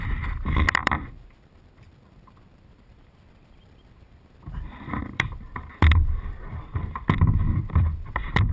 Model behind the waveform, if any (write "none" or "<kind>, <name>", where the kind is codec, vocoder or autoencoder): vocoder, BigVGAN v2